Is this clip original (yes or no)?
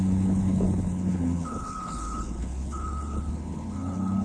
no